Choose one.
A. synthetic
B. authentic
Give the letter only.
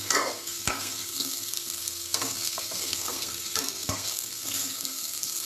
A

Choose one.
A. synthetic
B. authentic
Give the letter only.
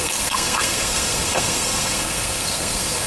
A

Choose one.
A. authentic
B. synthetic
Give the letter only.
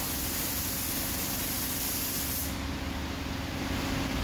A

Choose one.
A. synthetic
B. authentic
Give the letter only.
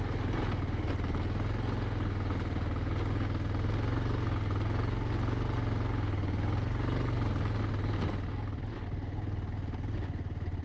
B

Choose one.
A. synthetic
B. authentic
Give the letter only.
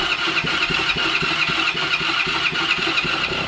B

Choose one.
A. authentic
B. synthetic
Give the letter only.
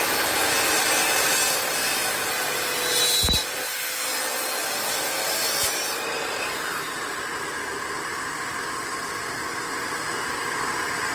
A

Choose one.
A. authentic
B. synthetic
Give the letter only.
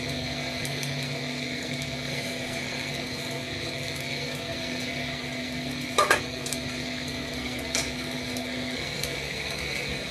B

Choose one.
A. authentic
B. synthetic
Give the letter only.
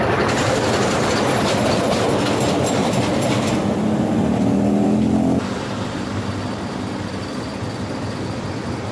A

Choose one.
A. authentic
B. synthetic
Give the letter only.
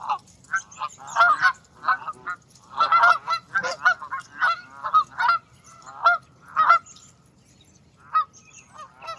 A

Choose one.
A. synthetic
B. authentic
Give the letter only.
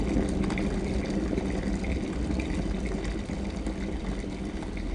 B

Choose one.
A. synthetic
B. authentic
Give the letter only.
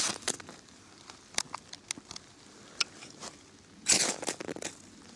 B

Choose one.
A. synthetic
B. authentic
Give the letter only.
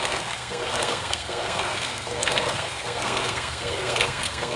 A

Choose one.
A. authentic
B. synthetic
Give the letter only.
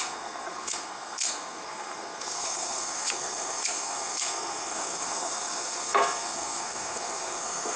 B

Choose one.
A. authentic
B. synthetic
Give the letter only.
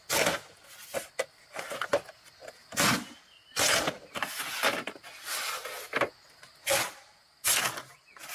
A